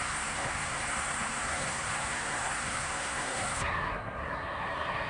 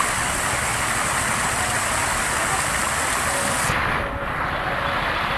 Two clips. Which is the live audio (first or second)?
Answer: second